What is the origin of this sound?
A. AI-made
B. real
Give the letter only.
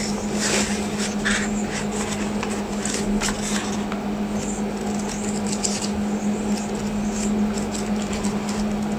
B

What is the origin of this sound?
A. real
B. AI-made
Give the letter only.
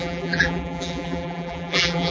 B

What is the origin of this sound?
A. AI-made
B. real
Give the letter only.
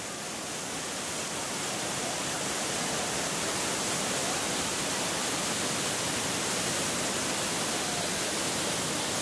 B